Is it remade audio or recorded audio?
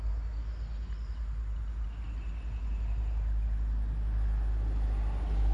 recorded